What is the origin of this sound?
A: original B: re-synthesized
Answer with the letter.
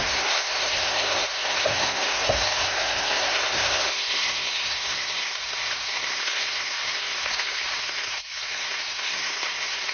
B